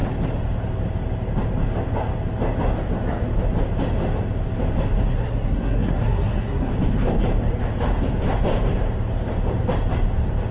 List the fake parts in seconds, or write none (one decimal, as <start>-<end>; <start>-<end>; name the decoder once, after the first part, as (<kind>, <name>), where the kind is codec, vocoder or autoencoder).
5.1-6.7 (codec, SNAC)